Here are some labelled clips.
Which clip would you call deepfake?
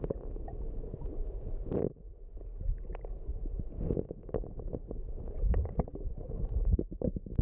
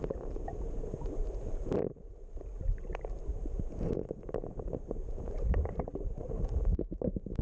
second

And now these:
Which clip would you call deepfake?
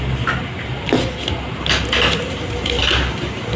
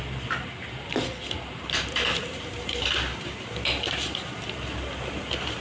second